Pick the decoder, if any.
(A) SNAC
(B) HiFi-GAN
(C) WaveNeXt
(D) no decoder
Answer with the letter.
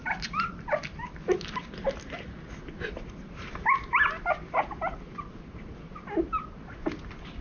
D